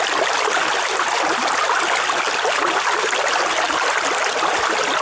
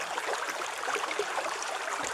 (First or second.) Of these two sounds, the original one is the first